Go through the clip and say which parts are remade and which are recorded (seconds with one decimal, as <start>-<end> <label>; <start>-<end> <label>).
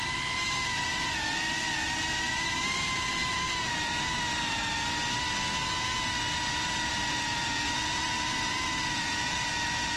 0.0-3.2 recorded; 3.2-4.6 remade; 4.6-6.9 recorded; 6.9-9.5 remade; 9.5-10.0 recorded